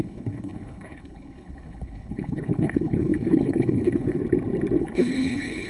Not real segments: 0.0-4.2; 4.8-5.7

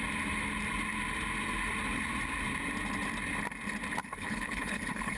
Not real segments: 4.0-5.2

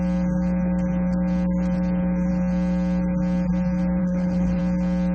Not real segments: 4.0-4.6